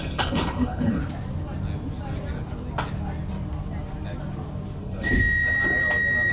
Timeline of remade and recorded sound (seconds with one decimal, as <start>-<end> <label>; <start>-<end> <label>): 0.0-1.0 remade; 1.0-4.8 recorded; 4.8-5.2 remade; 5.2-6.3 recorded